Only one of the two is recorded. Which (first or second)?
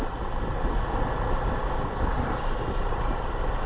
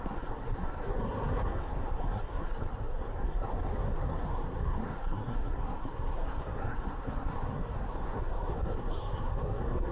first